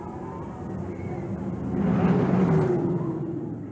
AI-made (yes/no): no